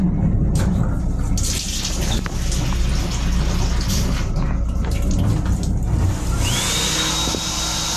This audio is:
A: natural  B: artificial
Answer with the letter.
A